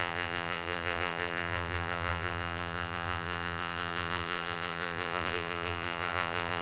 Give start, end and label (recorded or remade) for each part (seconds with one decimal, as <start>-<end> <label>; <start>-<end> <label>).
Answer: 0.0-6.6 remade